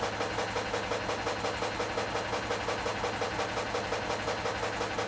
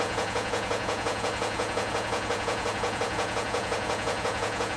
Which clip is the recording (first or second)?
first